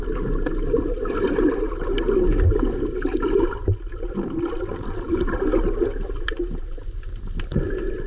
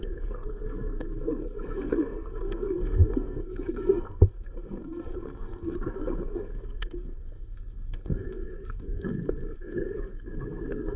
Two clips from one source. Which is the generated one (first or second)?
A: second